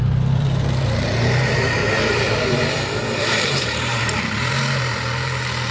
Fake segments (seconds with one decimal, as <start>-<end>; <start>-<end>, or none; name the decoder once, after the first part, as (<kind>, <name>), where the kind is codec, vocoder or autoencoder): 0.0-5.7 (vocoder, BigVGAN v2)